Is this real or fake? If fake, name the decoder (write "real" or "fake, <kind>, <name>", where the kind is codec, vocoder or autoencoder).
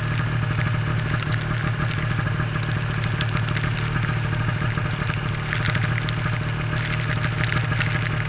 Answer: real